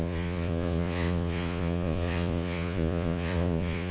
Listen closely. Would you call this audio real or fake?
fake